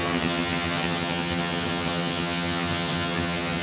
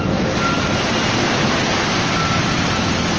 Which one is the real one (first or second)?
second